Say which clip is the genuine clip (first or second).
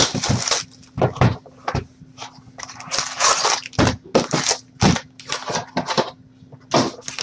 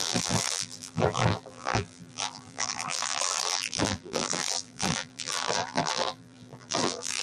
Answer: first